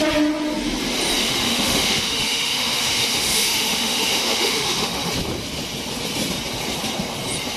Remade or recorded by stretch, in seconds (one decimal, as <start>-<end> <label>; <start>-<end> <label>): 0.0-1.2 recorded; 1.2-5.1 remade; 5.1-7.6 recorded